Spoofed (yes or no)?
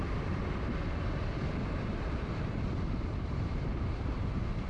yes